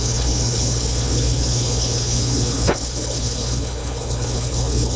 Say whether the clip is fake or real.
fake